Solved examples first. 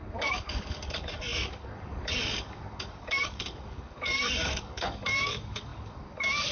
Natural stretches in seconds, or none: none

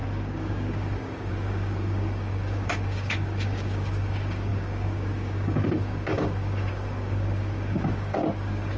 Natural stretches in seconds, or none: none